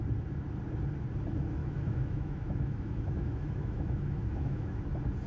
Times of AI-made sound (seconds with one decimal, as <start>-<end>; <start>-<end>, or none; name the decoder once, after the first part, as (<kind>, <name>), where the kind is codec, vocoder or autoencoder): 1.6-4.8 (autoencoder, DAC-VAE)